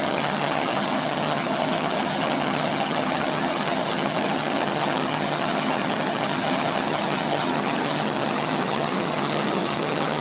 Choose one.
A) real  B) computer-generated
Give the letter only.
B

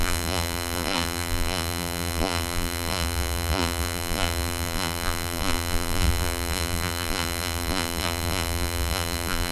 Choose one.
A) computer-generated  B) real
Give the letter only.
A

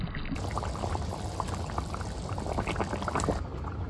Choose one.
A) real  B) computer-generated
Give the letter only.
A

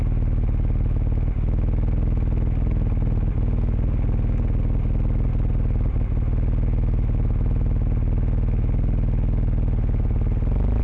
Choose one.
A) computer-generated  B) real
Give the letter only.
B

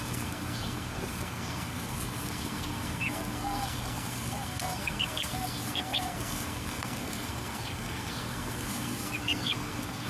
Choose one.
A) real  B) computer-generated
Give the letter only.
B